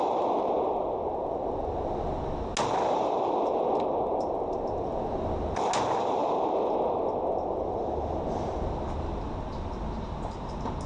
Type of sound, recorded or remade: recorded